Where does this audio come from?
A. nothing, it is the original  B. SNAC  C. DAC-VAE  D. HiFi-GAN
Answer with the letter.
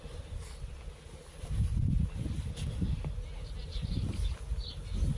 A